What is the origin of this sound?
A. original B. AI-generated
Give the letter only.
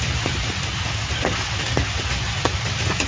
A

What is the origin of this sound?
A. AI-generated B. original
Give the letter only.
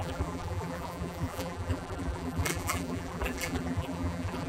A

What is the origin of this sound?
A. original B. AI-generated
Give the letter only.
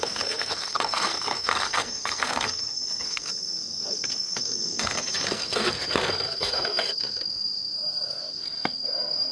B